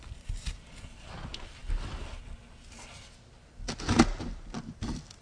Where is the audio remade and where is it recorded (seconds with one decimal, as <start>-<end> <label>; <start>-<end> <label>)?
0.0-1.6 remade; 1.6-4.3 recorded; 4.3-5.2 remade